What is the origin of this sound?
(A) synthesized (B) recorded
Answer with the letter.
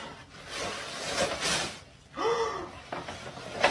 B